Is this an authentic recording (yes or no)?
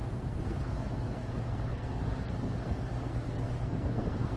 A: no